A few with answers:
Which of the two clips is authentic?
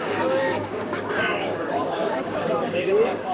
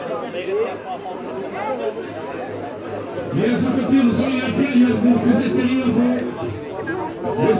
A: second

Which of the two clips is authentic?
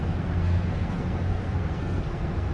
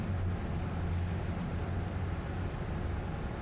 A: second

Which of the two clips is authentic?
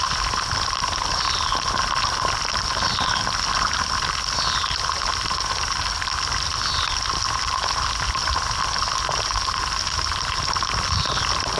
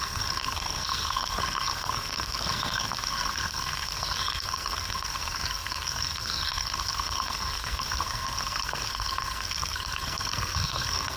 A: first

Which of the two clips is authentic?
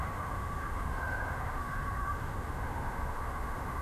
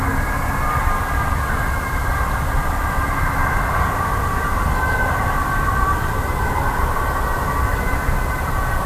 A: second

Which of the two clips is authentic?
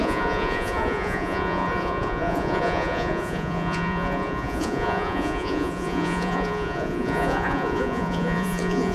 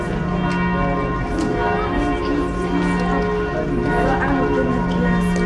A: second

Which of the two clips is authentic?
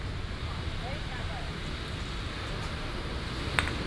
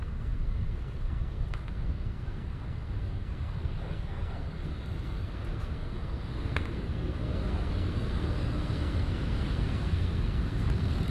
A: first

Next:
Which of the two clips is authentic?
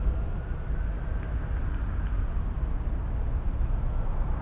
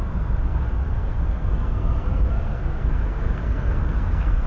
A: first